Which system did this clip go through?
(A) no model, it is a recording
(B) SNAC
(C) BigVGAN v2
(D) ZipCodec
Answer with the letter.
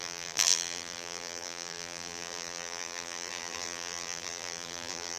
C